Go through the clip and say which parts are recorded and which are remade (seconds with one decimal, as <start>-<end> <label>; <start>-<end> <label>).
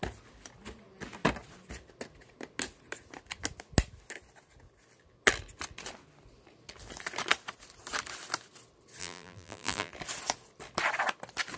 0.0-9.0 recorded; 9.0-9.9 remade; 9.9-11.6 recorded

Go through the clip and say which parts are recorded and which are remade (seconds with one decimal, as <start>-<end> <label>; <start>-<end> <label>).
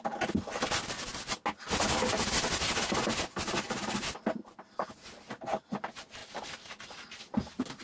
0.0-7.8 recorded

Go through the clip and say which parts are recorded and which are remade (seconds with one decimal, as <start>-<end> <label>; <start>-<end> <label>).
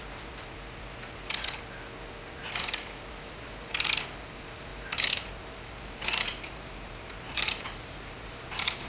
0.0-4.7 recorded; 4.7-8.9 remade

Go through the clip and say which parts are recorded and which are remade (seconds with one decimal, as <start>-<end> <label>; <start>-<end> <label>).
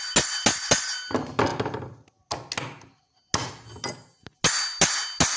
0.0-5.4 recorded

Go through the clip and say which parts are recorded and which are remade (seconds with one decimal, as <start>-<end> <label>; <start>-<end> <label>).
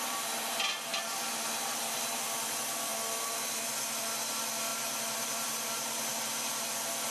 0.0-4.7 recorded; 4.7-6.6 remade; 6.6-7.1 recorded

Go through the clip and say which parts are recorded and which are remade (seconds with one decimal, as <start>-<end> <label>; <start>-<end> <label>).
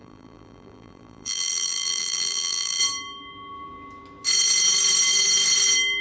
0.0-2.8 remade; 2.8-6.0 recorded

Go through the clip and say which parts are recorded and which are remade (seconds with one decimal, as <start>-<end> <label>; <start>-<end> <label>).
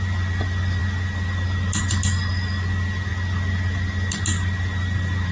0.0-3.1 remade; 3.1-4.2 recorded; 4.2-5.3 remade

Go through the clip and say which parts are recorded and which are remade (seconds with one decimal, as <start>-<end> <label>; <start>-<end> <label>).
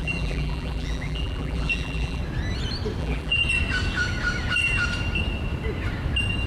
0.0-2.2 remade; 2.2-3.0 recorded; 3.0-3.4 remade; 3.4-6.5 recorded